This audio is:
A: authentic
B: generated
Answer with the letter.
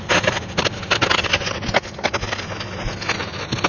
A